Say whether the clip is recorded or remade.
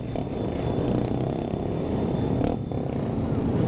recorded